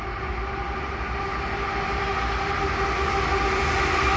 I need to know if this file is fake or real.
real